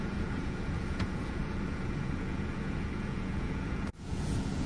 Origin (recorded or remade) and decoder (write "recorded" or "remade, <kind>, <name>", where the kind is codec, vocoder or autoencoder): remade, vocoder, Vocos